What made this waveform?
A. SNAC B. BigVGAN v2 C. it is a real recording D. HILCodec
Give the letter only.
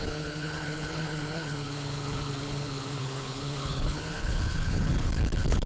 D